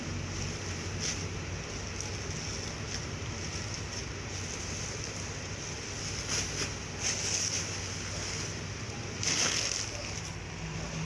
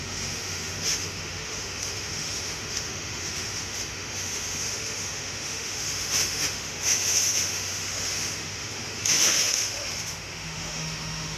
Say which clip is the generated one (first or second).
second